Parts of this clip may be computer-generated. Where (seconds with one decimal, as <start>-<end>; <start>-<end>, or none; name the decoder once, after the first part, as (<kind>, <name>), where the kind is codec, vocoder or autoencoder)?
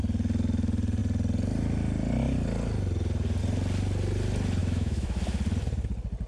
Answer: 4.6-5.2 (autoencoder, DAC-VAE)